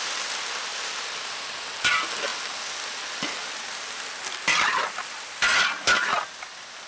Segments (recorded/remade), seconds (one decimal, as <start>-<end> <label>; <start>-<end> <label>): 0.0-0.7 recorded; 0.7-1.4 remade; 1.4-6.9 recorded